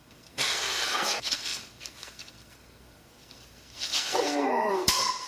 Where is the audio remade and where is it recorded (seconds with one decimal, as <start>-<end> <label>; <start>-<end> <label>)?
0.0-5.3 remade